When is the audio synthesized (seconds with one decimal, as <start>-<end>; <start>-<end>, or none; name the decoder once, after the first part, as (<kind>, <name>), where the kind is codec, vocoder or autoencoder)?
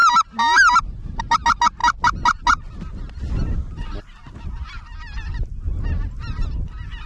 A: none